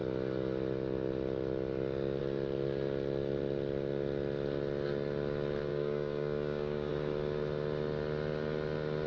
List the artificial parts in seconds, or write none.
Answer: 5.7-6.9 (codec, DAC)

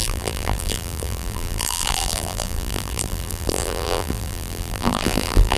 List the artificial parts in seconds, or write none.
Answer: 0.0-5.6 (vocoder, BigVGAN v2)